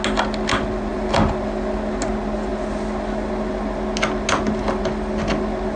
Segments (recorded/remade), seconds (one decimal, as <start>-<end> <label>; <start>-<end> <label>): 0.0-5.8 recorded